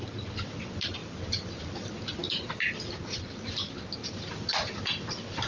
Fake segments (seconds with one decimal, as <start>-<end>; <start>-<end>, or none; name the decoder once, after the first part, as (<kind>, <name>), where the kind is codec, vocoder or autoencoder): none